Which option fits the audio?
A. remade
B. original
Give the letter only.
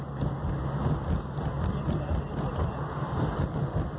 B